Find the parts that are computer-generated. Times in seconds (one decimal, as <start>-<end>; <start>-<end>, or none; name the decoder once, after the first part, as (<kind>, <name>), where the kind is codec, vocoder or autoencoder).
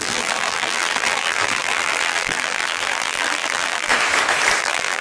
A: 0.0-3.9 (vocoder, BigVGAN v2); 4.6-5.0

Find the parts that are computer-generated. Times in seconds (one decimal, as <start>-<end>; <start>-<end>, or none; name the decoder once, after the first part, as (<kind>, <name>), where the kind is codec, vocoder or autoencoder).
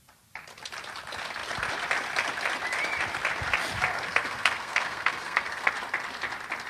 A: 3.9-5.7 (codec, SNAC)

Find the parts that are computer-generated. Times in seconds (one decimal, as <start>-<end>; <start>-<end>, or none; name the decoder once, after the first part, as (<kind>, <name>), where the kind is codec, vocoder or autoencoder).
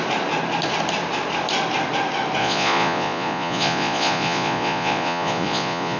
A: 2.4-6.0 (vocoder, Vocos)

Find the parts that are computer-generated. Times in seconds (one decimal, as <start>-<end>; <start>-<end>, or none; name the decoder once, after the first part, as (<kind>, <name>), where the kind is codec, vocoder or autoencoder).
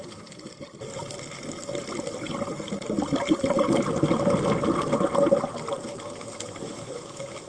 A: 5.9-7.5 (autoencoder, DAC-VAE)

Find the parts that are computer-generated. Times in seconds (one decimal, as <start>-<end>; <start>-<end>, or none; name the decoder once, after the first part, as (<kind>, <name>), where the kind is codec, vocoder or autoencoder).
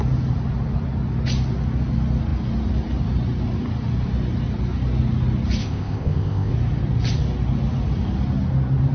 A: 5.6-6.5 (codec, ZipCodec)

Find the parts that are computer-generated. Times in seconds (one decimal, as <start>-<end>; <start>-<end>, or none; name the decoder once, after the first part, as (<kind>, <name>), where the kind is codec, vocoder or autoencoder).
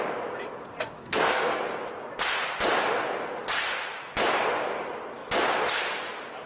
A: 1.0-1.6 (codec, SNAC)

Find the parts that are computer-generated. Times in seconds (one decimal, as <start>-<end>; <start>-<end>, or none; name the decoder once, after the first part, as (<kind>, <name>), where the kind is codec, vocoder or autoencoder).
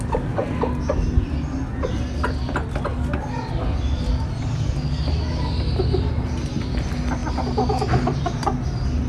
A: none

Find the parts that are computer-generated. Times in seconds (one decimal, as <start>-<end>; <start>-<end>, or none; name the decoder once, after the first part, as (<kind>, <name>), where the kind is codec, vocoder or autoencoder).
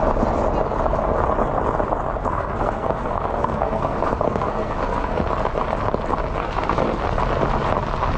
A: 2.2-5.2 (codec, SNAC); 6.4-7.2